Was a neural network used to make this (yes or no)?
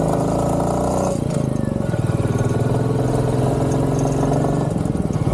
no